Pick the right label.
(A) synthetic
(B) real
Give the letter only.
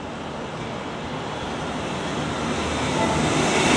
B